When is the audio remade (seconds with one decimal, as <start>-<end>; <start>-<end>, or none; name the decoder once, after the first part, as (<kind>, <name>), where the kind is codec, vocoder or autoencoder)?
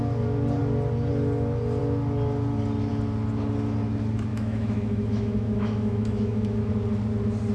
4.3-6.7 (autoencoder, DAC-VAE)